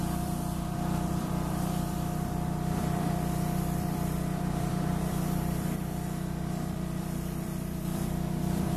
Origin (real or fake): fake